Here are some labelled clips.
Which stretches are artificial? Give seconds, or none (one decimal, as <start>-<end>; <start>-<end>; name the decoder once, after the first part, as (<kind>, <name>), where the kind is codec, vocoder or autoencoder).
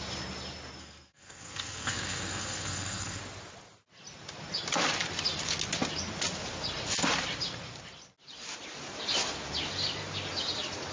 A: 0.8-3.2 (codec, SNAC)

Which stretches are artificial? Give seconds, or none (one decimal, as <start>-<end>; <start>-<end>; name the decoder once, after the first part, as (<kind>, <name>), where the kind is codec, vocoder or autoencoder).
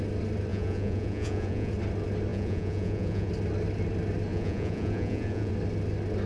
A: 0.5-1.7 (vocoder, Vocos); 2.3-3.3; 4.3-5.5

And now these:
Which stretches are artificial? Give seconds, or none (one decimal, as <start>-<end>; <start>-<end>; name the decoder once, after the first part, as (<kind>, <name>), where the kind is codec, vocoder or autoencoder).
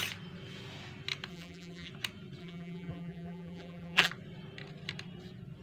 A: 1.3-1.9 (vocoder, BigVGAN v2); 2.4-4.1